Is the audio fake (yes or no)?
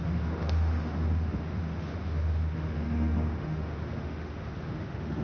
yes